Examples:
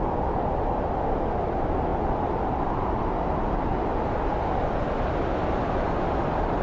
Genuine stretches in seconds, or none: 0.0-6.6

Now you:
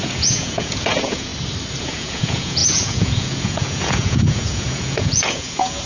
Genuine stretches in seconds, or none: 1.3-1.8

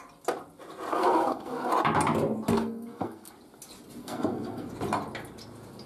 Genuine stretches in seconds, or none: 0.0-0.9; 1.7-2.5; 3.3-4.0; 4.7-5.9

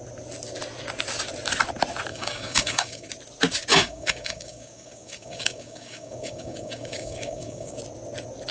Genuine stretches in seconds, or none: 0.0-2.1; 3.1-3.7; 7.8-8.5

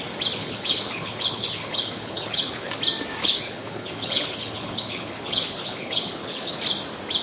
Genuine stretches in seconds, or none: 0.0-0.4; 2.7-3.2; 6.6-7.2

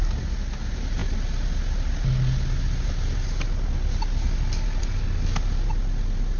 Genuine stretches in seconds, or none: 0.0-6.4

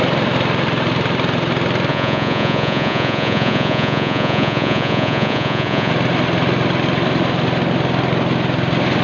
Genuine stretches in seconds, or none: 0.0-1.9; 5.9-9.0

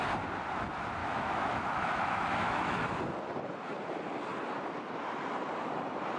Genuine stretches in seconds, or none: 0.0-1.0; 2.9-6.2